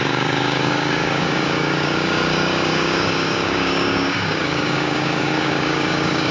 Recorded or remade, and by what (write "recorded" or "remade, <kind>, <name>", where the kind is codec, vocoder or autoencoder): remade, codec, DAC